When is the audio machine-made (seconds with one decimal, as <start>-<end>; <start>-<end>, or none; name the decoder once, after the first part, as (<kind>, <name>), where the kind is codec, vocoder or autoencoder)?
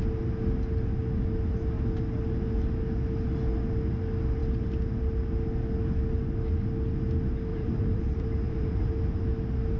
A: 7.5-8.9 (vocoder, BigVGAN v2)